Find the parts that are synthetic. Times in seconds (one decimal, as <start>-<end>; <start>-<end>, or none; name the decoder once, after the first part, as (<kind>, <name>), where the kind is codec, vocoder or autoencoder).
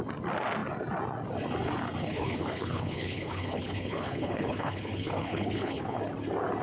2.0-6.0 (codec, HILCodec)